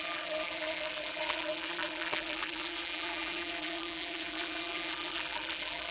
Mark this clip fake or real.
fake